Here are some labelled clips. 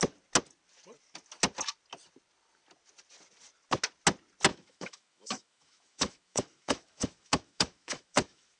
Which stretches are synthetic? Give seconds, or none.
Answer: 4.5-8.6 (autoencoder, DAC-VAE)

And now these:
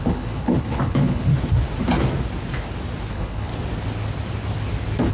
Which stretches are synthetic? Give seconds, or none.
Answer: 0.0-1.3 (codec, HILCodec); 3.1-3.5

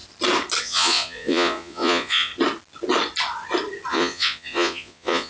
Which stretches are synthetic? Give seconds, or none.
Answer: 0.6-2.3 (vocoder, Vocos); 3.9-5.3

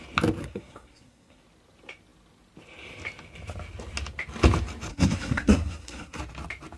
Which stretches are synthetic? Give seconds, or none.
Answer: 0.4-1.4 (codec, SNAC); 4.9-6.2

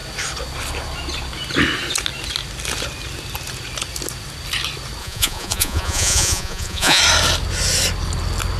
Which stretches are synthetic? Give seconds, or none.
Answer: 5.0-7.0 (vocoder, Vocos)